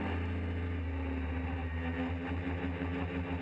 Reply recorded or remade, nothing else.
recorded